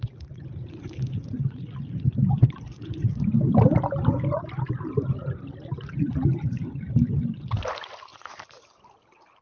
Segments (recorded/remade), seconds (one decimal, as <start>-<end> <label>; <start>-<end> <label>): 0.0-9.4 recorded